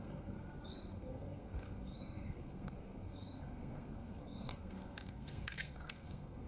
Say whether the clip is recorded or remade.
remade